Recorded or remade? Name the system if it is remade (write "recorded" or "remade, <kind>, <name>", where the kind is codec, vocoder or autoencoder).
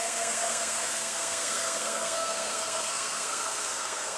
remade, codec, SNAC